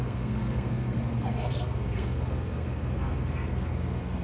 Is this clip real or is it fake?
fake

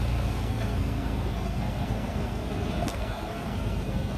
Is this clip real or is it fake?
fake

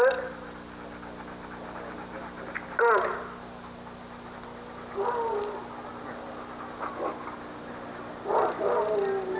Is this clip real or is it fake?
real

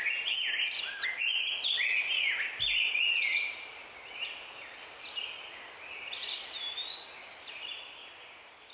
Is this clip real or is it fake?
real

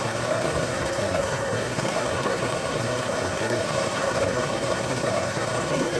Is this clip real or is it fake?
fake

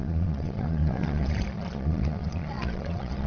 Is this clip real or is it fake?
fake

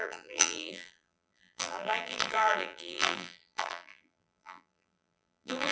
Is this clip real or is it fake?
fake